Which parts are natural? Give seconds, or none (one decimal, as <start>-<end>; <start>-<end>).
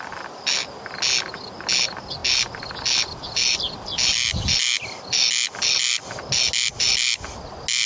0.0-7.9